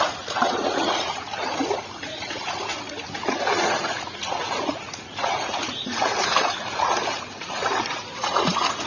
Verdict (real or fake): fake